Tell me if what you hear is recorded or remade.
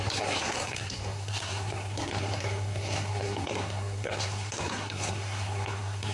remade